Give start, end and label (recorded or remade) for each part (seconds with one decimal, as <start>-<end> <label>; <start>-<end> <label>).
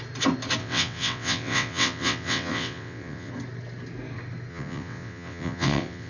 0.0-0.6 recorded; 0.6-3.3 remade; 3.3-4.5 recorded; 4.5-6.1 remade